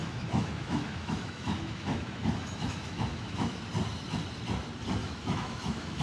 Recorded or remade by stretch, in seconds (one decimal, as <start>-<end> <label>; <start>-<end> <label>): 0.0-3.6 remade; 3.6-5.0 recorded; 5.0-6.0 remade